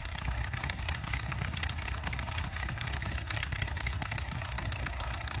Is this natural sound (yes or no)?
no